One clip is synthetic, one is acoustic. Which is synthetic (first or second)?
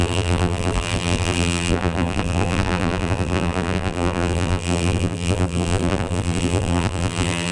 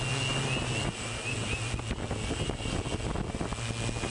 first